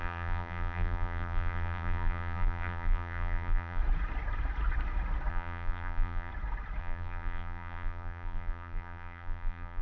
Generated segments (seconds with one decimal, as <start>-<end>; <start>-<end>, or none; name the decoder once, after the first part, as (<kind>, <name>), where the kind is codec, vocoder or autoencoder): 0.0-3.8 (vocoder, BigVGAN v2); 5.3-6.3; 6.8-9.8

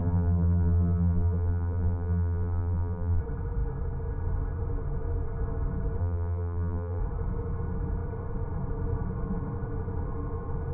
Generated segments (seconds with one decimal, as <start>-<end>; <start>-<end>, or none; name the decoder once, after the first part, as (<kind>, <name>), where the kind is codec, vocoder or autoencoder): 0.0-3.2 (vocoder, BigVGAN v2); 6.0-7.0

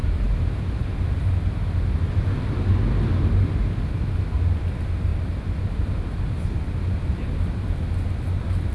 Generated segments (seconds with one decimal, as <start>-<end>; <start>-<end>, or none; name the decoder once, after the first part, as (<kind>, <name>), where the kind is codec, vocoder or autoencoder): 0.0-1.3 (vocoder, BigVGAN v2); 5.1-6.4

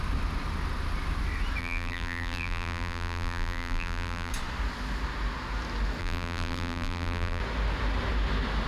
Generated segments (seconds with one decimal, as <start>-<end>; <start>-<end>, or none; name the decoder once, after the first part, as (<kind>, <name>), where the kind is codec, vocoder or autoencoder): 1.6-4.3 (vocoder, BigVGAN v2); 6.0-7.4

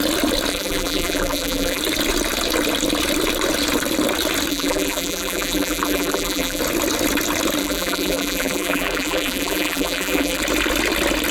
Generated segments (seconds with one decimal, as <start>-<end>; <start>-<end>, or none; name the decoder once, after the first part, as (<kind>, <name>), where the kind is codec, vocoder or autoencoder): 0.5-1.8 (vocoder, BigVGAN v2); 4.5-6.6; 7.6-10.4

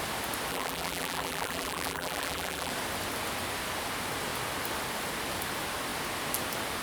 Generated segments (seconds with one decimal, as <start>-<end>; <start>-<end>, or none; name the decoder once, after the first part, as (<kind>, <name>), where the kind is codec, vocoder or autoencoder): 0.5-2.7 (vocoder, BigVGAN v2)